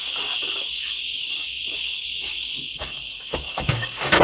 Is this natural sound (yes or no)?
no